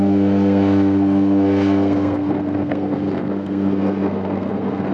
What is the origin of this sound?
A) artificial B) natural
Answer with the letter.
A